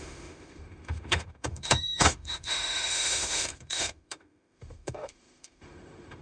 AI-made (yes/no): yes